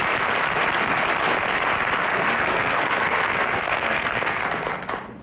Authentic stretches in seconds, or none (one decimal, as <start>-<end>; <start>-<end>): 0.0-2.1; 4.4-5.2